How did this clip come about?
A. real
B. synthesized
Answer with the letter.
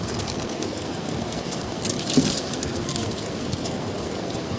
B